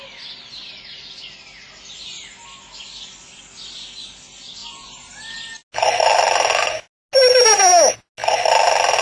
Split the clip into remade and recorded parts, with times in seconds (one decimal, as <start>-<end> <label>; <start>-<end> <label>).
0.0-9.0 recorded